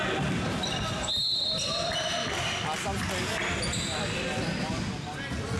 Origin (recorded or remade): recorded